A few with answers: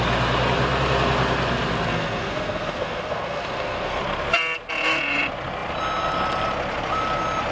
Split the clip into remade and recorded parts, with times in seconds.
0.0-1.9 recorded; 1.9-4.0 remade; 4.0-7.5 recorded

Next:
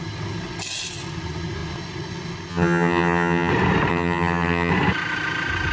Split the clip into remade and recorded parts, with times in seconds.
0.0-2.5 recorded; 2.5-3.5 remade; 3.5-3.9 recorded; 3.9-4.7 remade; 4.7-5.7 recorded